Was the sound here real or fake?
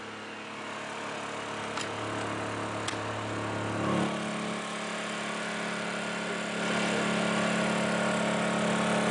real